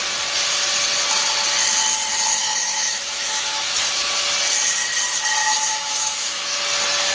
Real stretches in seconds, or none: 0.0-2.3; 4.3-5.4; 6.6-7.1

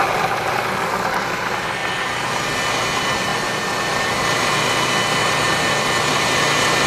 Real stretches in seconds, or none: 0.9-5.2; 5.8-6.9

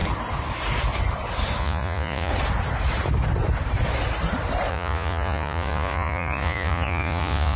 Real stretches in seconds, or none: 0.0-1.6; 2.3-4.7

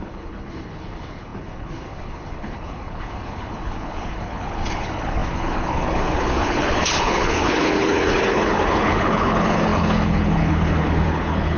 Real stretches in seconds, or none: none